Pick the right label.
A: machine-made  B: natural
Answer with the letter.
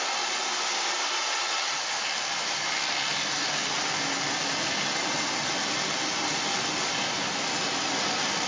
B